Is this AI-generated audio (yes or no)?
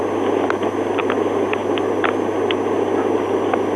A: no